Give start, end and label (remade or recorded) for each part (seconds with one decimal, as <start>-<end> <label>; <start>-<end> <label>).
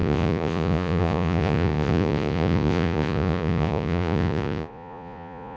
0.0-5.6 remade